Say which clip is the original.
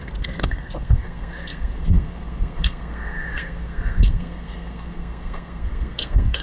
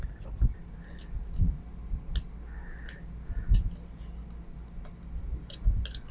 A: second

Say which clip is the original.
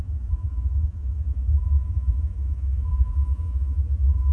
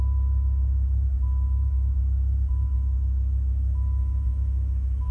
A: second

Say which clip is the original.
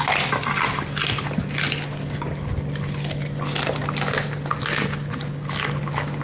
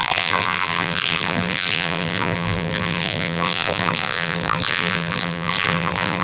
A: first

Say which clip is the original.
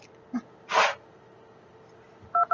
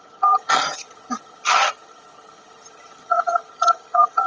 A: first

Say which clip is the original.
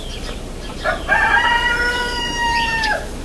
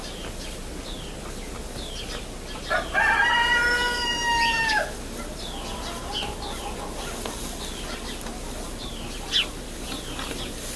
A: second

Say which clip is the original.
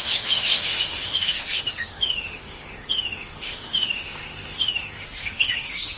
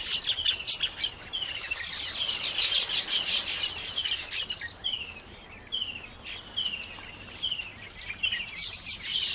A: second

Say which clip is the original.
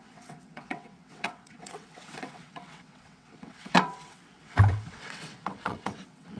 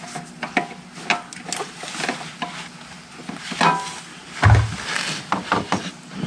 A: second